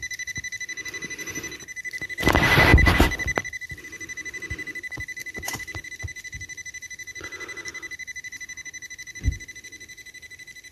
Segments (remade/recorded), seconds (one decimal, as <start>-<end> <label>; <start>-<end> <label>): 0.0-2.7 recorded; 2.7-3.8 remade; 3.8-5.2 recorded; 5.2-5.9 remade; 5.9-7.7 recorded; 7.7-9.5 remade; 9.5-10.7 recorded